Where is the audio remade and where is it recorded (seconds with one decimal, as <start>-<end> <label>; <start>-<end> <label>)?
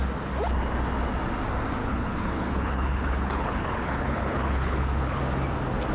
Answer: 0.0-1.8 recorded; 1.8-5.2 remade; 5.2-5.9 recorded